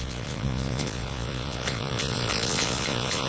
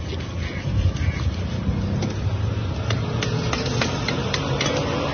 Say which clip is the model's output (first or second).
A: first